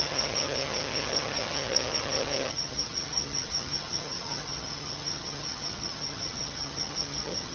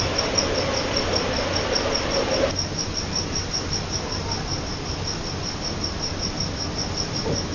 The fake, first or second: first